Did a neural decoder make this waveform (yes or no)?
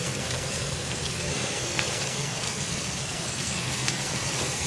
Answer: yes